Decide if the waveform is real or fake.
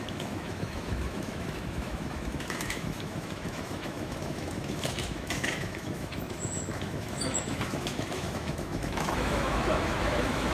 fake